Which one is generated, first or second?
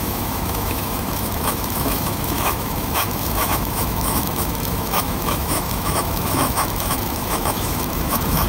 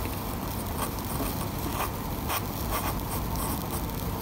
first